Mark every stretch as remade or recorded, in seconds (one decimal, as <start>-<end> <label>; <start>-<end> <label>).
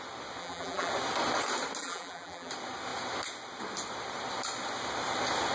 0.0-0.4 recorded; 0.4-0.9 remade; 0.9-1.8 recorded; 1.8-2.5 remade; 2.5-5.5 recorded